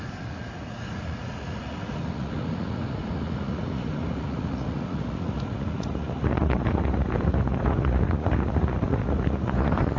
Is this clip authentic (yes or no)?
no